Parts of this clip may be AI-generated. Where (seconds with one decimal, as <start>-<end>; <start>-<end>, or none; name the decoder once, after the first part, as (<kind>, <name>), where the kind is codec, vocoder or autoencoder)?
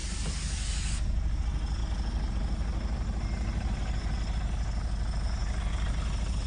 none